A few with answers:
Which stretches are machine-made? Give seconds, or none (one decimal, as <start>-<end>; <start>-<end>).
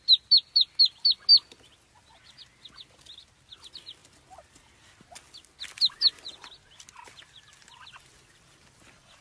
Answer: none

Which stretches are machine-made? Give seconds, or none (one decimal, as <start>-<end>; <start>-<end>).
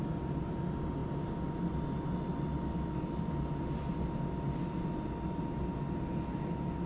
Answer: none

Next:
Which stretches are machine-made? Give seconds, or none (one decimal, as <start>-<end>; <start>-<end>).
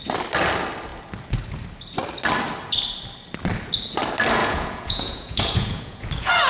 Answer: 4.4-6.5